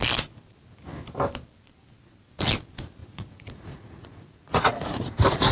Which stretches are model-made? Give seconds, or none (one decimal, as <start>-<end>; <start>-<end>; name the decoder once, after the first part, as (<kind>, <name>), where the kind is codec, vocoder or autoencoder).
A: 3.0-5.0 (vocoder, Vocos)